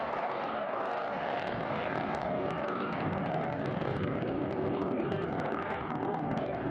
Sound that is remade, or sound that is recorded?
remade